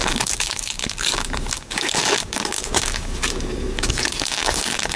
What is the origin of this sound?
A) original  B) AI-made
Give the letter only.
B